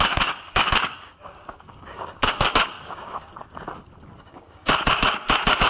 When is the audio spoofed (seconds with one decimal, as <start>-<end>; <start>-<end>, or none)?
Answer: 0.0-3.3; 4.2-5.7